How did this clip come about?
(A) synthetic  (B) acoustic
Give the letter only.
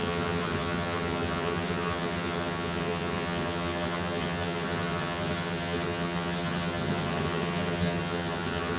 A